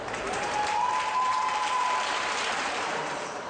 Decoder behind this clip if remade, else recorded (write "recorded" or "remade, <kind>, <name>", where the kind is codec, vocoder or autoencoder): remade, vocoder, BigVGAN v2